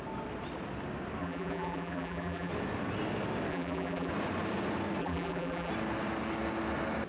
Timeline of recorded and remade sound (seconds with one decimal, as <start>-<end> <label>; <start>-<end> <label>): 0.0-1.2 recorded; 1.2-2.5 remade; 2.5-3.5 recorded; 3.5-4.1 remade; 4.1-5.0 recorded; 5.0-5.7 remade; 5.7-7.1 recorded